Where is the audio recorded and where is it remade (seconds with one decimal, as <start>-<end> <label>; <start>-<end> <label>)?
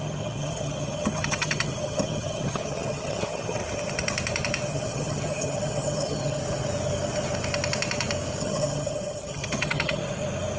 0.0-3.6 remade; 3.6-4.7 recorded; 4.7-6.4 remade; 6.4-8.4 recorded; 8.4-10.0 remade; 10.0-10.6 recorded